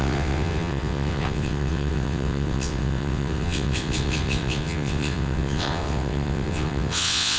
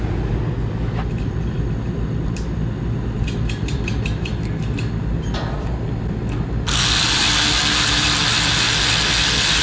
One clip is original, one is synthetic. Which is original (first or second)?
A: second